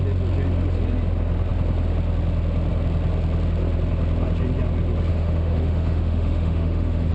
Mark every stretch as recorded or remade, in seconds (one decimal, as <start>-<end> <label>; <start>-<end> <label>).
0.0-5.1 recorded; 5.1-7.1 remade